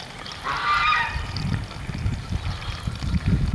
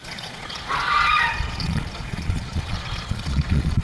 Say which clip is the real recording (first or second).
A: first